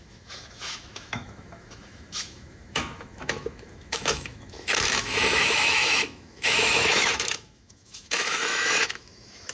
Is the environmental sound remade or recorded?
remade